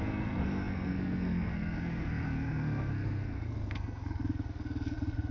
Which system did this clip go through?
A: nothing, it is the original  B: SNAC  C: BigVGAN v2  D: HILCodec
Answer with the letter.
B